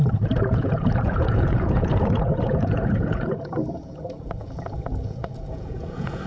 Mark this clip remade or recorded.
remade